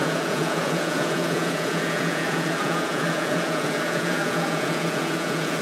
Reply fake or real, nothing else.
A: fake